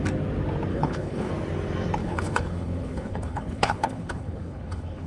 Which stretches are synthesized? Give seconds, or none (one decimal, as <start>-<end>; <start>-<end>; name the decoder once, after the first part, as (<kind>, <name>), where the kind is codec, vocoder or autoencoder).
0.7-1.3 (codec, HILCodec); 2.0-5.1